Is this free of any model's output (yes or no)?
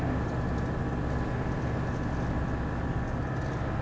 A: yes